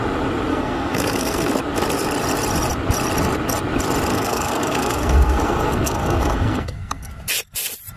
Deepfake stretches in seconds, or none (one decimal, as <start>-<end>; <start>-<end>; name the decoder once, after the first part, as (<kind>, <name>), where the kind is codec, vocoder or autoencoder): 0.5-1.5 (codec, SNAC); 4.1-7.1